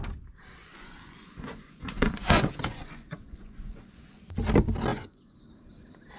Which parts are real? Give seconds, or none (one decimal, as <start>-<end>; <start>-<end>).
0.0-0.6; 4.3-4.9; 5.4-6.2